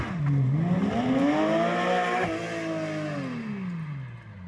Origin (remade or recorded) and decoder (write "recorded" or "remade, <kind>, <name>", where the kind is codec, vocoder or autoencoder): recorded